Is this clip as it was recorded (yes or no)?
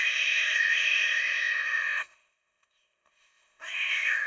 no